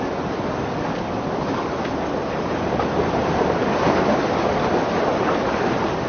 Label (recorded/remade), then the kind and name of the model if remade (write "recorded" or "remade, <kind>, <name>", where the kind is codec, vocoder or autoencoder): recorded